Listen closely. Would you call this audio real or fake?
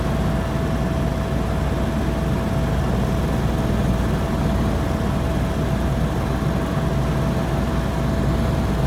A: real